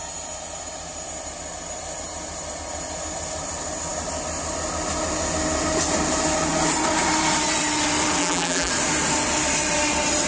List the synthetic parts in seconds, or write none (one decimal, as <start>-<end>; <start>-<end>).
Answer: 8.2-8.7